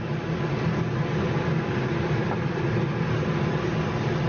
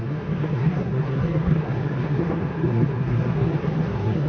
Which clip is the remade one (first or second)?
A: second